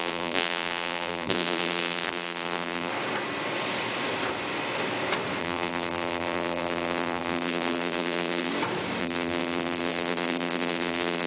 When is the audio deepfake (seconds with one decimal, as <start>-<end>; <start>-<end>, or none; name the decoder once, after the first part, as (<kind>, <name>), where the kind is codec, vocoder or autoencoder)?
0.0-2.9 (vocoder, BigVGAN v2); 5.4-8.5; 9.0-11.3